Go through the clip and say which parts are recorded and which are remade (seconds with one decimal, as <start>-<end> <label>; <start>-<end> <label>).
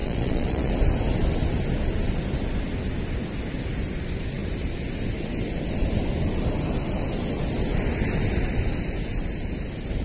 0.0-0.7 remade; 0.7-10.0 recorded